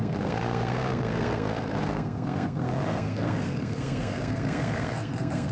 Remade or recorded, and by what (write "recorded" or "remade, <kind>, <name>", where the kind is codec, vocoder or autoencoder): remade, codec, SNAC